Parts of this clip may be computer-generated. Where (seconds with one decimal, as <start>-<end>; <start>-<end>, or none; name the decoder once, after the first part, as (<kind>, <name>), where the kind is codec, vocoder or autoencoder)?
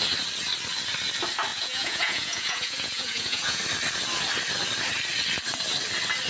1.5-3.6 (vocoder, Vocos)